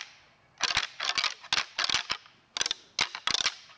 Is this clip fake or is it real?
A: real